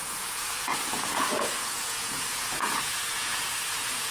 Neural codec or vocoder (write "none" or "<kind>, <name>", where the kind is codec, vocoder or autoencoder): vocoder, Vocos